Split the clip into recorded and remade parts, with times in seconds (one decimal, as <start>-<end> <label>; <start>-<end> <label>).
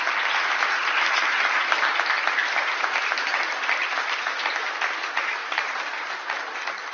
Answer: 0.0-5.4 recorded; 5.4-5.9 remade; 5.9-6.9 recorded